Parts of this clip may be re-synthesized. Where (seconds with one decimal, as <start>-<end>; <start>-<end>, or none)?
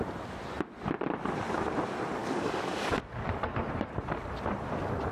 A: 2.2-3.0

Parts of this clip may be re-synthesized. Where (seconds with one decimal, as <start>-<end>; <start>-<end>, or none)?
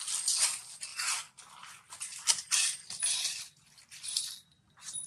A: none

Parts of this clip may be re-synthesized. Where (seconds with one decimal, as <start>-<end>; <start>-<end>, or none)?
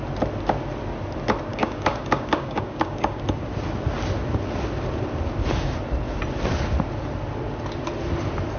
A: 1.5-3.2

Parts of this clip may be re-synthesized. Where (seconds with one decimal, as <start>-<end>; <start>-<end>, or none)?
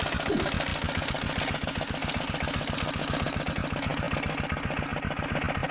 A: none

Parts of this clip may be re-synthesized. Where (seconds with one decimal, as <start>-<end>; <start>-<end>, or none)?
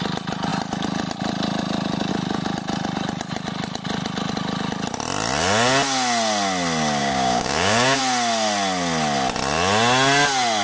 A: 7.0-8.0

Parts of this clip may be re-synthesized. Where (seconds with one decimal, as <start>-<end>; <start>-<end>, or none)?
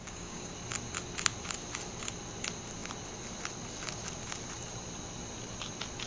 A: 0.0-0.5